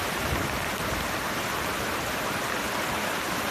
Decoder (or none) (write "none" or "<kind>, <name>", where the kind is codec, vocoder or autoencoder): none